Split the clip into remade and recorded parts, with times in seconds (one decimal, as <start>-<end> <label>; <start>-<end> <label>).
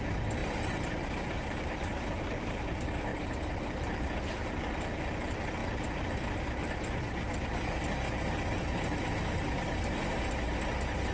0.0-0.4 recorded; 0.4-2.6 remade; 2.6-3.1 recorded; 3.1-4.7 remade; 4.7-11.1 recorded